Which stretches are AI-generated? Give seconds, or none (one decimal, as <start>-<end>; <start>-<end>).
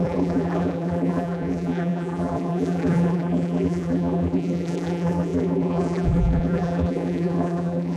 0.0-8.0